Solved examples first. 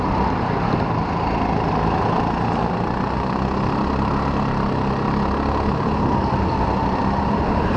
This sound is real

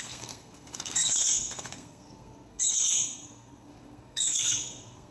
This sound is fake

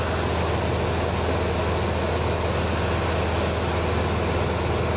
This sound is real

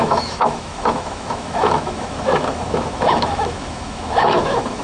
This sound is fake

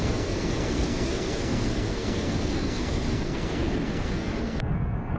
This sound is fake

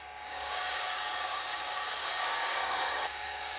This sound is fake